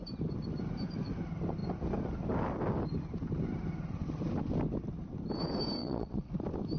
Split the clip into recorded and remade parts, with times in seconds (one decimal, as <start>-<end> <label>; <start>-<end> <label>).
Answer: 0.0-5.8 recorded; 5.8-6.3 remade; 6.3-6.8 recorded